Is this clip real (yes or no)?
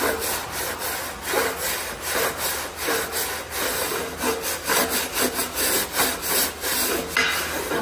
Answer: yes